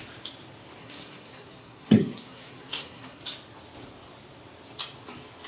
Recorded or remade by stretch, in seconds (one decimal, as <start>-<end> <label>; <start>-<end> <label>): 0.0-0.8 recorded; 0.8-3.2 remade; 3.2-5.5 recorded